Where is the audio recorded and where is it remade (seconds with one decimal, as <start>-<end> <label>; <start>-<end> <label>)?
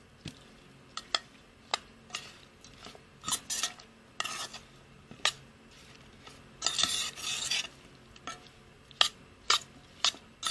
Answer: 0.0-10.5 recorded